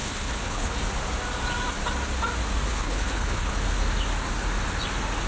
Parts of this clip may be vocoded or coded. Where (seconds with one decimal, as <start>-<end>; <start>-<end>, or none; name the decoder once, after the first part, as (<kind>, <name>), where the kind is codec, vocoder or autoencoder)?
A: 0.0-0.8 (codec, HILCodec); 2.7-3.5